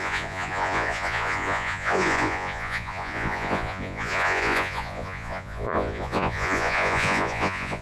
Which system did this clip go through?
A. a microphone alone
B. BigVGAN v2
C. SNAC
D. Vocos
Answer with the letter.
D